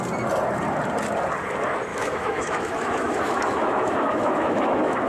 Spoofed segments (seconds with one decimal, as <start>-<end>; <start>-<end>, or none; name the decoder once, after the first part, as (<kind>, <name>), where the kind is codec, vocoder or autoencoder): 1.9-5.1 (autoencoder, DAC-VAE)